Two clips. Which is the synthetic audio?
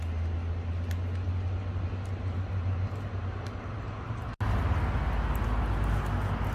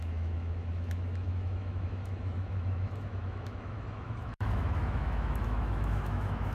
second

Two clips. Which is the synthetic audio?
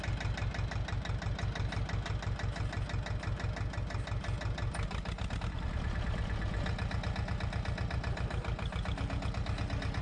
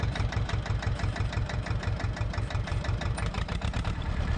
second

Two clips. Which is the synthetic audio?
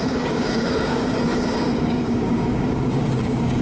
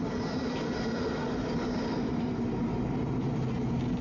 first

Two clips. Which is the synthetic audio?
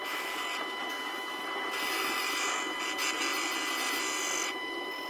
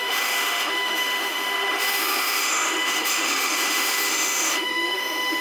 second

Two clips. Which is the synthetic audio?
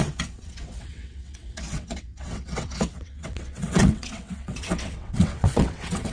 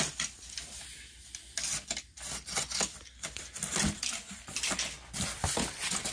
first